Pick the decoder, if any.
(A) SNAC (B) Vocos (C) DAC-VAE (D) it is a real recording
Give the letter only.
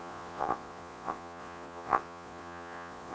B